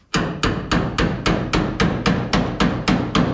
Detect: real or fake real